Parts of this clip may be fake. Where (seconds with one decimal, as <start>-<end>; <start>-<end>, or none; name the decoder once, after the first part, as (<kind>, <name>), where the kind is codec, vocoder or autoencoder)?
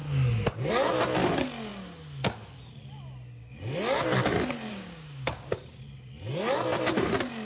4.7-5.8 (codec, DAC)